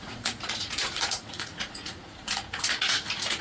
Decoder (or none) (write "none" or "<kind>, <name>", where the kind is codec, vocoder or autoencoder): vocoder, Vocos